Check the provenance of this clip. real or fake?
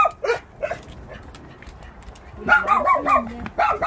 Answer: real